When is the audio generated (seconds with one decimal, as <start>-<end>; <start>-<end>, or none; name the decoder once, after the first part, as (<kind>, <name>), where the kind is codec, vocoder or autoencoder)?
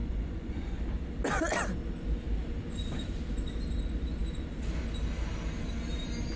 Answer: 0.0-0.8 (vocoder, Vocos)